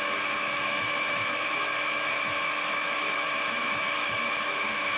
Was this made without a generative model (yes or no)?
no